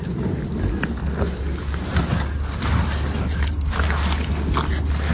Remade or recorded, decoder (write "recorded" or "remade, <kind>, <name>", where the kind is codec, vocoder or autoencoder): recorded